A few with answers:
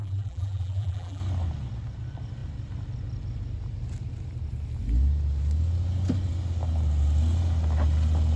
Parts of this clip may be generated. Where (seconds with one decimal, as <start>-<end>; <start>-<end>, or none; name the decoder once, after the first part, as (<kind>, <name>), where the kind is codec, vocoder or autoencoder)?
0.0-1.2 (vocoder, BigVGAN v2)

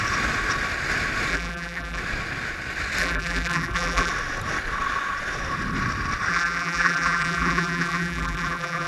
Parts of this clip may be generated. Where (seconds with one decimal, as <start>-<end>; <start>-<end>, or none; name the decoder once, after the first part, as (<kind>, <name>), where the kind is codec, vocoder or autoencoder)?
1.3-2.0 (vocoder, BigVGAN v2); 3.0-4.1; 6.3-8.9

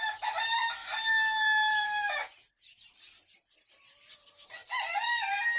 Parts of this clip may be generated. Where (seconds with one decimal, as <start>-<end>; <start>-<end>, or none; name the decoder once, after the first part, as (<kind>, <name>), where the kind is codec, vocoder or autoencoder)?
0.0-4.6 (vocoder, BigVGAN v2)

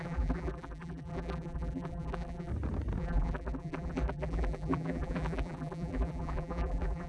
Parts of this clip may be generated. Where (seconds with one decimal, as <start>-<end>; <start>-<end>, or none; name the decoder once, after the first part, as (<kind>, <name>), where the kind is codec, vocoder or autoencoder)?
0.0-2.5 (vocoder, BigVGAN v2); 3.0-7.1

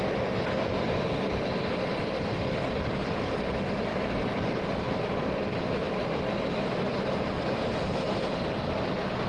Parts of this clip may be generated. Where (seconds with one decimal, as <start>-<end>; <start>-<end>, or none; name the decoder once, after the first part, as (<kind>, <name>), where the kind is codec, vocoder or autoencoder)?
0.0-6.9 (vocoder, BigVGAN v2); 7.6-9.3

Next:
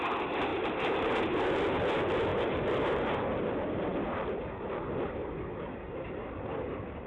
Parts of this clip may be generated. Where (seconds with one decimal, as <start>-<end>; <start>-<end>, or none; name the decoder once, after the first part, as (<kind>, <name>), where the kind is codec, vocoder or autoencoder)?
0.5-1.6 (vocoder, BigVGAN v2); 2.3-3.5; 6.5-7.1